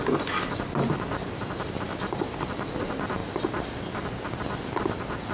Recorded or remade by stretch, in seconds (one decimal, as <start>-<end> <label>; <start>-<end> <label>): 0.0-5.3 recorded